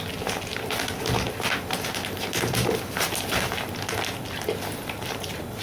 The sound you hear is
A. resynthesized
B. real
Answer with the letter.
B